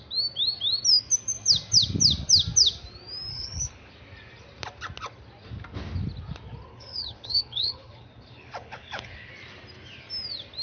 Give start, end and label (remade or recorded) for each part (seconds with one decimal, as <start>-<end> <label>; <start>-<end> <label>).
0.0-3.3 recorded; 3.3-3.9 remade; 3.9-6.7 recorded; 6.7-9.3 remade; 9.3-10.6 recorded